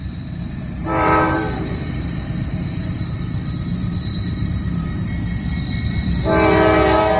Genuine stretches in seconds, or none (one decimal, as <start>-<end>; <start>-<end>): 0.0-0.8; 5.1-7.2